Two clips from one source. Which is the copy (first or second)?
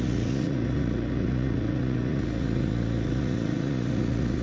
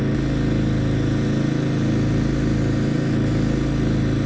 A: first